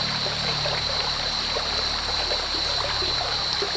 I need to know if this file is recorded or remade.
remade